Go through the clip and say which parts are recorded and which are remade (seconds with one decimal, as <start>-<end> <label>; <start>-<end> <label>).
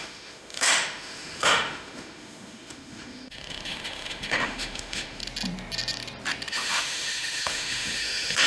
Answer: 0.0-5.2 remade; 5.2-6.5 recorded; 6.5-8.5 remade